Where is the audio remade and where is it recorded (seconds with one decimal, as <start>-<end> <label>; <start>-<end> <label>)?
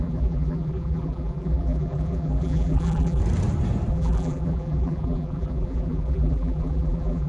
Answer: 0.0-3.2 remade; 3.2-3.9 recorded; 3.9-7.3 remade